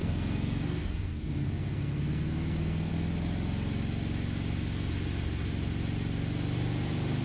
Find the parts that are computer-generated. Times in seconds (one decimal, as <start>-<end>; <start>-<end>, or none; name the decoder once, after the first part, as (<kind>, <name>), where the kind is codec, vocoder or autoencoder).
0.0-2.9 (codec, SNAC)